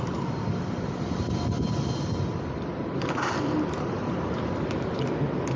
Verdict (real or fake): real